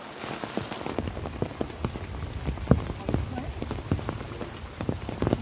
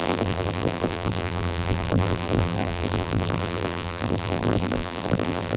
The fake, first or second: second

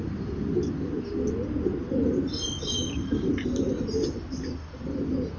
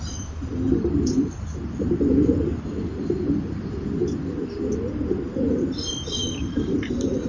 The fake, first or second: second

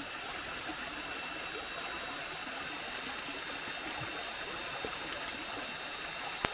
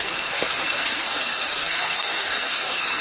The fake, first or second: second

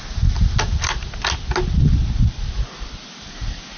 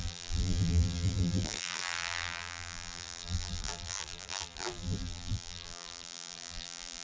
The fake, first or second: second